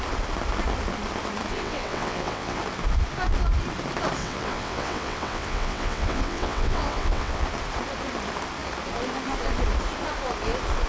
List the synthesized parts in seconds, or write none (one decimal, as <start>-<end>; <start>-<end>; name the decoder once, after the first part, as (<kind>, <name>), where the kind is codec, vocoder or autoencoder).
1.5-2.6 (vocoder, WaveNeXt); 4.2-7.4